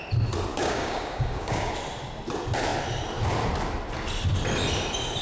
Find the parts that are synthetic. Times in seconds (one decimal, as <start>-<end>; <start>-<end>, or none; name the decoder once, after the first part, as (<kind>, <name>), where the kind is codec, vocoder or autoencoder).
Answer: 0.5-1.7 (codec, DAC)